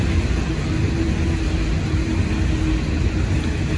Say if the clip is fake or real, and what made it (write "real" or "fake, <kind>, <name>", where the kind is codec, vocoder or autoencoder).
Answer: real